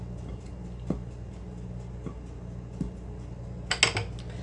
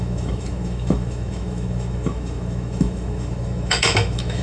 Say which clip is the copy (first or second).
second